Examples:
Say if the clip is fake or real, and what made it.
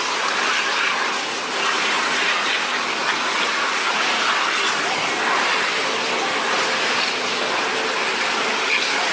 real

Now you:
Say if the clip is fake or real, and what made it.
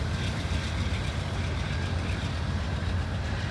real